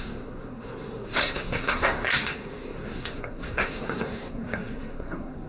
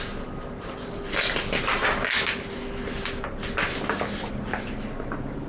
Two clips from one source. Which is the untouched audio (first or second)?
second